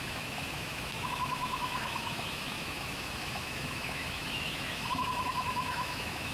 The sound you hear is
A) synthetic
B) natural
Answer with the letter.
A